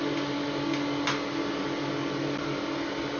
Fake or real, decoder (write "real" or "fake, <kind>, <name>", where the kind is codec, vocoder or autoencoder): real